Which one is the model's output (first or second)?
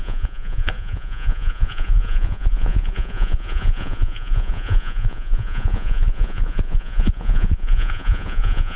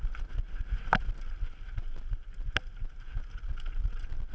first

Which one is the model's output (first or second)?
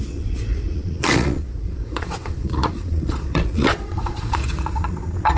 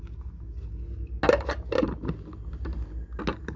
first